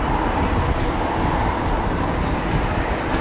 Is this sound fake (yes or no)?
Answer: no